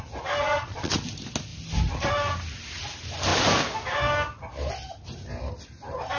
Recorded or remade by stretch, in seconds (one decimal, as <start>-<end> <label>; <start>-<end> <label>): 0.0-0.4 recorded; 0.4-0.9 remade; 0.9-6.2 recorded